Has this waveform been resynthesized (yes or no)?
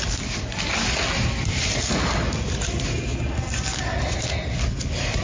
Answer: no